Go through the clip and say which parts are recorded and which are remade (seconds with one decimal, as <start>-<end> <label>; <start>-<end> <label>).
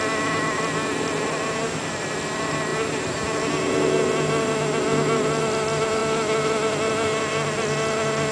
0.0-8.3 recorded